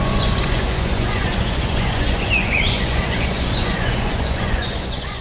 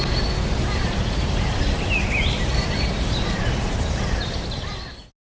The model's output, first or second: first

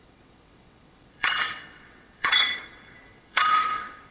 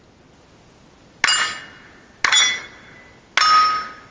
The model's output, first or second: first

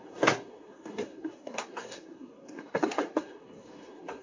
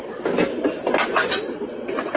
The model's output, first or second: first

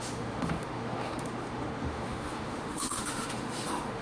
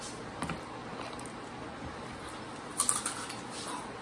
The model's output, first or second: first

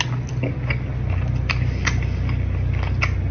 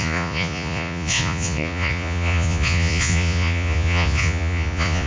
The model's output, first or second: second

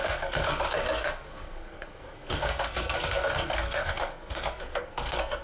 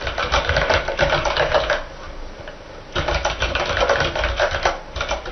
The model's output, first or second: first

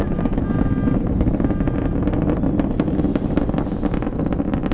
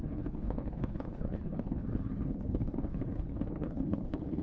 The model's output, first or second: second